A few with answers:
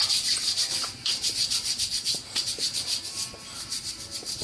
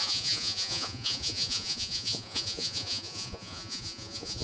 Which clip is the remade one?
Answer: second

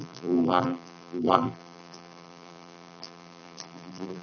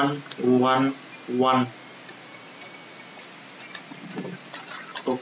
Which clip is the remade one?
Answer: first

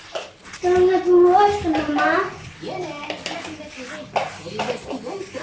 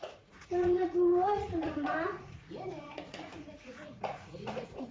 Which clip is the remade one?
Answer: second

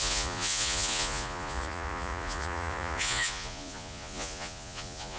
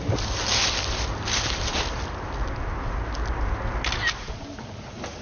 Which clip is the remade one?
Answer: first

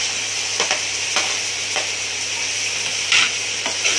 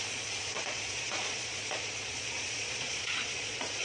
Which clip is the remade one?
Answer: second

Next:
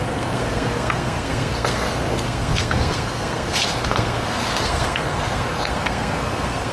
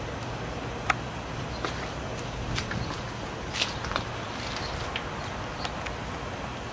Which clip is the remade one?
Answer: first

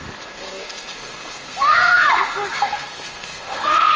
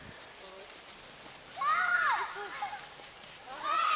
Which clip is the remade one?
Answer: first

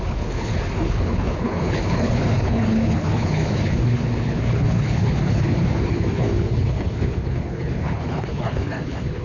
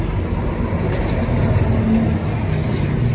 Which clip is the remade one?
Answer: first